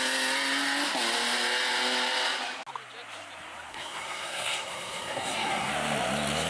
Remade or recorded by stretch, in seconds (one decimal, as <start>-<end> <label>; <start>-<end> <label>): 0.0-3.7 recorded; 3.7-5.7 remade; 5.7-6.5 recorded

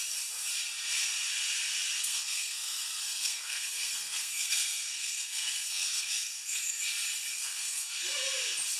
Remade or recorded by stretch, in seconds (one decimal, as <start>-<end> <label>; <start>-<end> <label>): 0.0-2.0 recorded; 2.0-6.8 remade; 6.8-7.3 recorded; 7.3-8.3 remade; 8.3-8.8 recorded

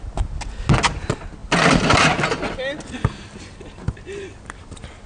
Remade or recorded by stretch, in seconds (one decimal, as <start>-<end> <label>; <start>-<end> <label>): 0.0-5.1 recorded